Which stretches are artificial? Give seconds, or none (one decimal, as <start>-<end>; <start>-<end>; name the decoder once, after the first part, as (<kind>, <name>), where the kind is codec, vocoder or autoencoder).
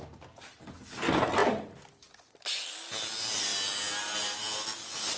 none